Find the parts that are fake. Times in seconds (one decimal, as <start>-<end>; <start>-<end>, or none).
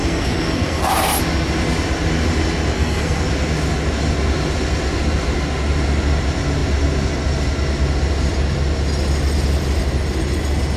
0.0-0.9; 2.7-3.2